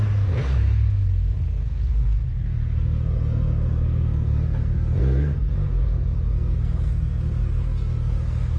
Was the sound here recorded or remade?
remade